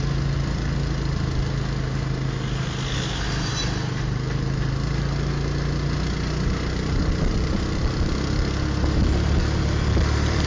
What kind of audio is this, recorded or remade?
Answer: recorded